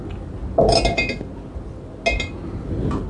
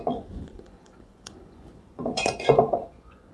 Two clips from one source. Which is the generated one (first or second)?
second